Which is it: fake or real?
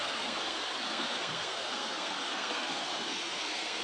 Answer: fake